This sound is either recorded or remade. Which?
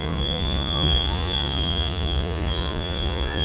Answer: remade